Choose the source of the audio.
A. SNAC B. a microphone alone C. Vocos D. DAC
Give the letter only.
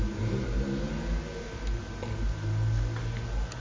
B